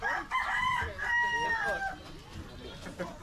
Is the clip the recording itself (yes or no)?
yes